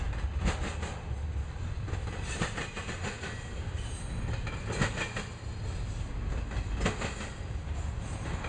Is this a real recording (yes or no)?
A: yes